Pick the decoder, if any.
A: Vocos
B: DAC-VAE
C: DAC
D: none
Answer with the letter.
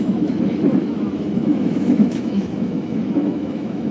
B